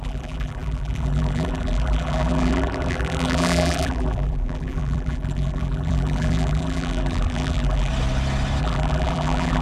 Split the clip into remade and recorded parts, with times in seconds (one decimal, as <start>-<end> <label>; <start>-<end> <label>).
0.0-7.9 remade; 7.9-8.6 recorded; 8.6-9.6 remade